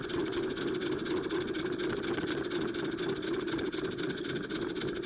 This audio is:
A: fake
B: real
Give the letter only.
B